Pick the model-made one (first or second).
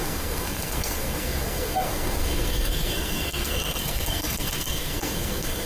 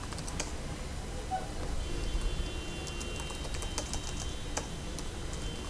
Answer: first